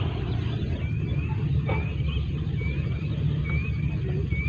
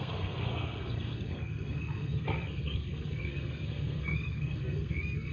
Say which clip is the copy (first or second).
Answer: second